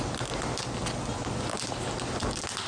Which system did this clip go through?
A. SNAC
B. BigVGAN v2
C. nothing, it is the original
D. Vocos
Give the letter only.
C